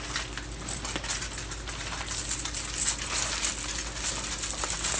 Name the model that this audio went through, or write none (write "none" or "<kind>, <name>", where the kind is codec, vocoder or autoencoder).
none